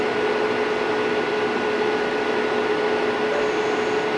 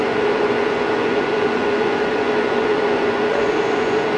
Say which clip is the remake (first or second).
second